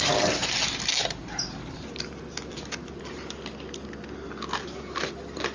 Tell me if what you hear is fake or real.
real